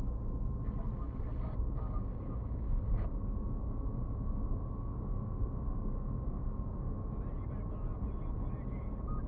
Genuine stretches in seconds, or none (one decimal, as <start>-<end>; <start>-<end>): 0.8-1.5; 7.0-9.3